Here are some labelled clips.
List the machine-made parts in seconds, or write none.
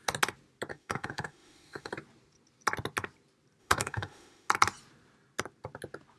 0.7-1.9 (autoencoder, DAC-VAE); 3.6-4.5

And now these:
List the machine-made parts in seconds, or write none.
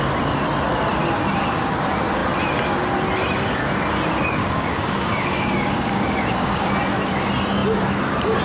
4.4-6.7 (codec, DAC)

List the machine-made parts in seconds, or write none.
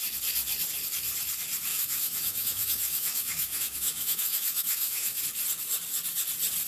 1.7-5.2 (autoencoder, DAC-VAE)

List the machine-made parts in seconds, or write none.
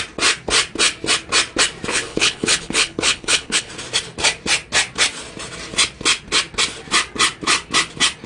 1.9-3.7 (codec, HILCodec)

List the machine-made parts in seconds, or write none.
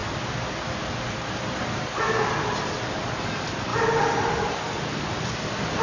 none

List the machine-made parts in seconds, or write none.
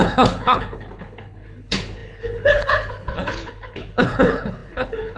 0.0-5.2 (codec, HILCodec)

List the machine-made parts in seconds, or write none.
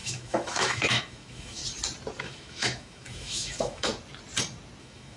0.0-1.6 (autoencoder, DAC-VAE); 2.2-3.9; 4.8-5.2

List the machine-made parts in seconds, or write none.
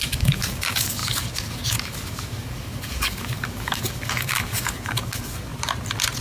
0.0-5.5 (codec, DAC)